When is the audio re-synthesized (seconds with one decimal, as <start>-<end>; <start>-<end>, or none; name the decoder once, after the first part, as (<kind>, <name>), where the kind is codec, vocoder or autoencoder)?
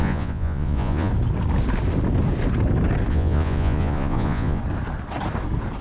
0.0-1.1 (vocoder, Vocos); 3.1-4.6